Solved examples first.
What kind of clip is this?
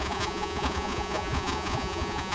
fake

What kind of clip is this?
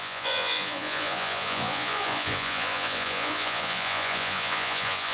fake